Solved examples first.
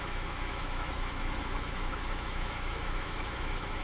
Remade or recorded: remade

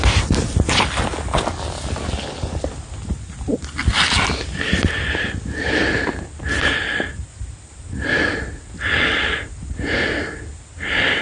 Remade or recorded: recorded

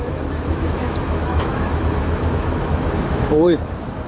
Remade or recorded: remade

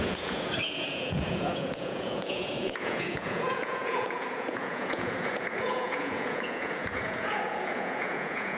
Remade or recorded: remade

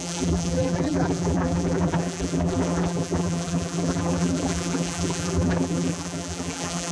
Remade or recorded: remade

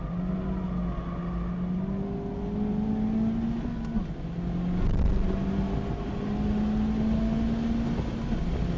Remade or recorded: recorded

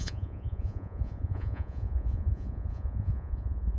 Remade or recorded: remade